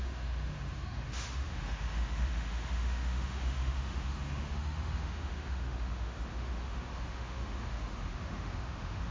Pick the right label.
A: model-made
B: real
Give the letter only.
A